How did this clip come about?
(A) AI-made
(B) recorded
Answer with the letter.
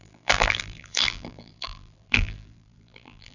A